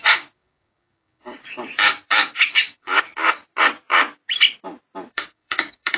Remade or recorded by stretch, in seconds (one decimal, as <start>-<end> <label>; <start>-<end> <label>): 0.0-3.4 remade; 3.4-5.1 recorded; 5.1-6.0 remade